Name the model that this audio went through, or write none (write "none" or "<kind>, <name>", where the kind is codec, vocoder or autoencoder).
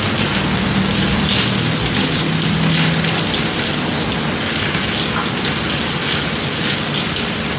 none